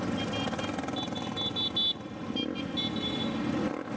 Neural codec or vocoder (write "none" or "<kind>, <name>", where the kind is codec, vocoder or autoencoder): none